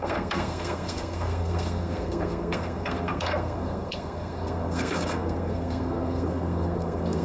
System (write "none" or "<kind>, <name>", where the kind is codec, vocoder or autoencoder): codec, SNAC